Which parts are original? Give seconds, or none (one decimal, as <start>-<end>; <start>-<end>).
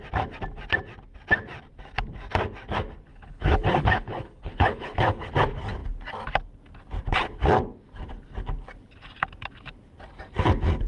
0.0-3.1; 5.3-10.9